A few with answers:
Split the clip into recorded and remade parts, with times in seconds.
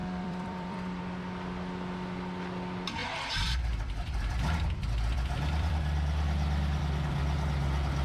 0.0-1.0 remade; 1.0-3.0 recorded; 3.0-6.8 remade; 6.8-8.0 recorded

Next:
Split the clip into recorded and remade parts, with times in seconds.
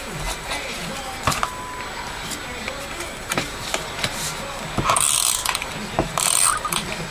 0.0-5.4 recorded; 5.4-7.1 remade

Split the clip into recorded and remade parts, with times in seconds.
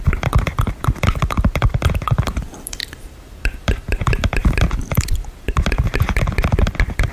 0.0-7.1 recorded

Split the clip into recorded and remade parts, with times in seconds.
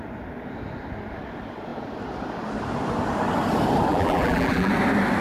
0.0-3.9 recorded; 3.9-4.7 remade; 4.7-5.2 recorded